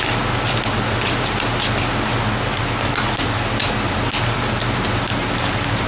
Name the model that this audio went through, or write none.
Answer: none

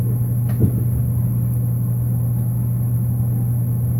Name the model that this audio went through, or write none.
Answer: none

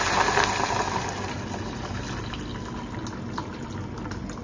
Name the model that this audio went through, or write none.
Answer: none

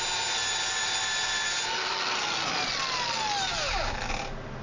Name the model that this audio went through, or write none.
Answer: none